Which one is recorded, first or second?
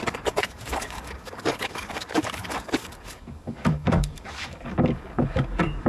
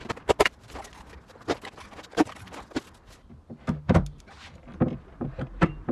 second